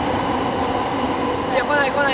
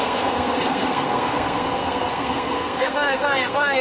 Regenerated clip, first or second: second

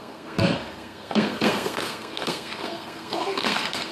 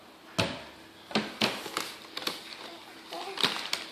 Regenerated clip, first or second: first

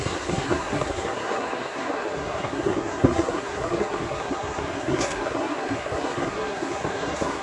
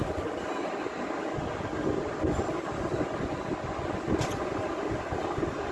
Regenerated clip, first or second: first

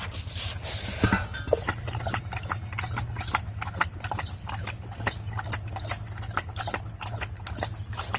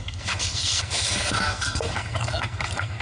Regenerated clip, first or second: second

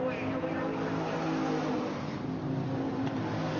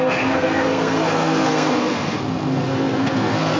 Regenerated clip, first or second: second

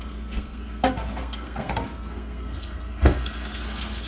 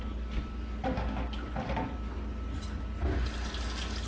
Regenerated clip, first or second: first